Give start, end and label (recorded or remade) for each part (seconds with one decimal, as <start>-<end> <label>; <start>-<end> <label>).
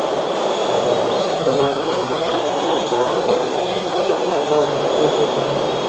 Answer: 0.0-1.2 recorded; 1.2-4.7 remade; 4.7-5.9 recorded